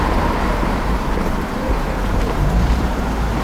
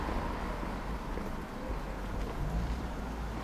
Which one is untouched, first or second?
second